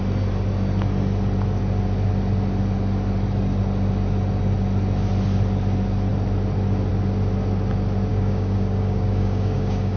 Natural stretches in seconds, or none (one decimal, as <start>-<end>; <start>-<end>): 0.0-8.1